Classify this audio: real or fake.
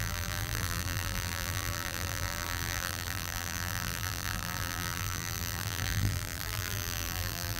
fake